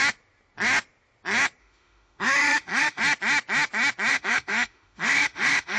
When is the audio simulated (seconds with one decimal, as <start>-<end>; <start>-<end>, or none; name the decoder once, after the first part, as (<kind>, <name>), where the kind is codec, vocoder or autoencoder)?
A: 1.6-3.0 (autoencoder, DAC-VAE); 4.1-5.8